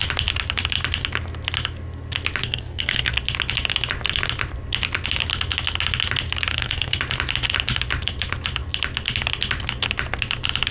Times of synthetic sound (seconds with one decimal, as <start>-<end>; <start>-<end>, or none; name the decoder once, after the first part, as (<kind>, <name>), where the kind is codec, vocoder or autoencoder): 2.4-3.1 (codec, SNAC); 6.5-7.0